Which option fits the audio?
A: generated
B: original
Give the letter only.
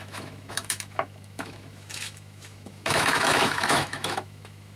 A